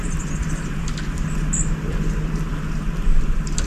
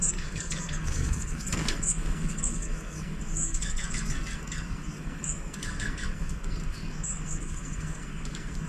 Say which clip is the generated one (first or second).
second